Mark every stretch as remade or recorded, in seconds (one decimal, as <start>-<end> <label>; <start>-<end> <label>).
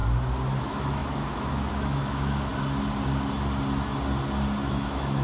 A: 0.0-0.6 recorded; 0.6-2.5 remade; 2.5-4.7 recorded; 4.7-5.2 remade